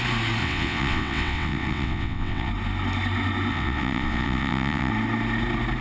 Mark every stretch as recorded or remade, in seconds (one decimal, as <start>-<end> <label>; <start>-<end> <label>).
0.0-0.4 recorded; 0.4-2.5 remade; 2.5-3.5 recorded; 3.5-4.9 remade; 4.9-5.8 recorded